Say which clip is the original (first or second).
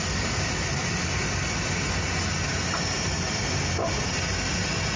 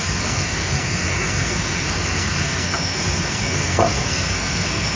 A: first